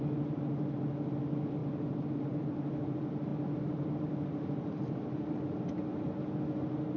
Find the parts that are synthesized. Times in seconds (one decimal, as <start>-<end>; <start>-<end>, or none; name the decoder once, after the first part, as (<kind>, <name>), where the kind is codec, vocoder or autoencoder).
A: none